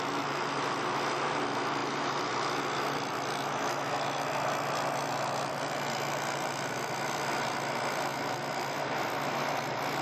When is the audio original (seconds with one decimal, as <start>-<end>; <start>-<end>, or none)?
0.0-10.0